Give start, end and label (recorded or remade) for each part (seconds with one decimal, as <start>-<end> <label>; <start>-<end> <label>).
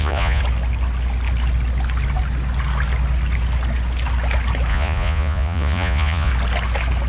0.0-0.4 remade; 0.4-4.7 recorded; 4.7-6.3 remade; 6.3-7.1 recorded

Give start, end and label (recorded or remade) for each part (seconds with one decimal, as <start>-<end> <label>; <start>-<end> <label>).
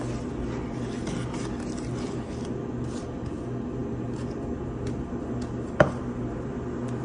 0.0-7.0 recorded